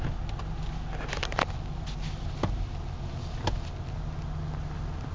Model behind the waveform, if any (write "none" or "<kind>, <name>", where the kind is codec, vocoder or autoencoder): none